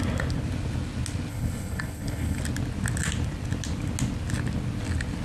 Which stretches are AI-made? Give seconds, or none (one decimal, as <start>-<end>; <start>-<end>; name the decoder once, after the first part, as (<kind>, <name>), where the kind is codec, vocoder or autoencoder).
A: 1.3-2.4 (codec, HILCodec)